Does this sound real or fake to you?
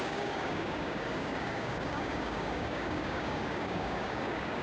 fake